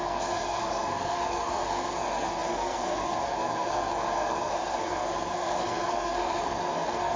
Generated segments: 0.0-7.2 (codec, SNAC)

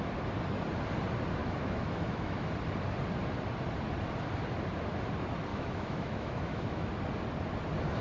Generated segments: 1.4-2.5 (autoencoder, DAC-VAE); 5.5-6.9

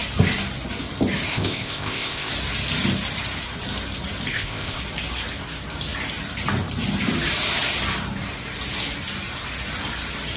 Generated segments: 1.3-2.3 (codec, ZipCodec); 4.3-4.8

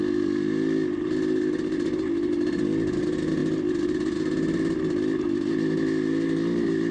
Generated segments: none

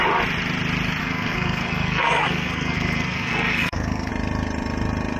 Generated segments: 1.0-4.1 (codec, SNAC)